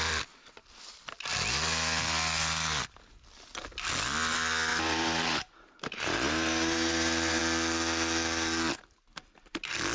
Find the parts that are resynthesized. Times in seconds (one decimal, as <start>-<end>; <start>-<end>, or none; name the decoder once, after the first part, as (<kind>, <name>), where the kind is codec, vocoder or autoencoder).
4.7-7.4 (vocoder, BigVGAN v2)